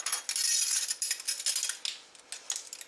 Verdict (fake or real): real